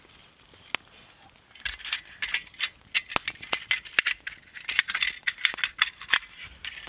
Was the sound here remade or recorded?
recorded